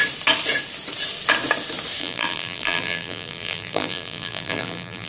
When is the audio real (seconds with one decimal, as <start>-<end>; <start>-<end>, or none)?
0.0-2.0

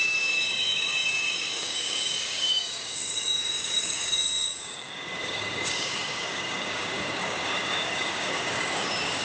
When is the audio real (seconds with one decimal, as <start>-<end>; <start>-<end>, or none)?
none

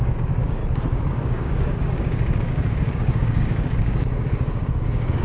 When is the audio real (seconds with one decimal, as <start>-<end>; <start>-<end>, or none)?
0.6-1.1

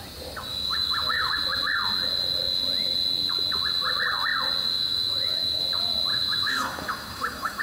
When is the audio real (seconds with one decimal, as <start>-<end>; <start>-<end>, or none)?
0.0-0.5; 1.3-4.7; 5.6-6.1

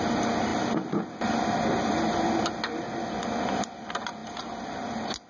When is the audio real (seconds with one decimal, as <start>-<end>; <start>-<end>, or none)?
0.0-5.3

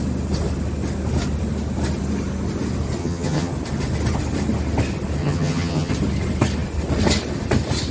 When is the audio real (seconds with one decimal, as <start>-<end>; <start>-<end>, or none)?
0.0-3.0; 3.5-5.2; 5.9-7.9